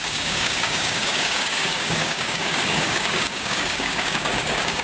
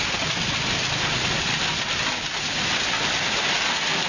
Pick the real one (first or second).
second